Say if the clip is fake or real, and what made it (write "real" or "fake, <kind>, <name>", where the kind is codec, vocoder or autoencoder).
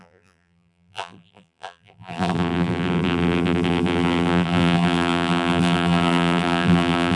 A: fake, vocoder, BigVGAN v2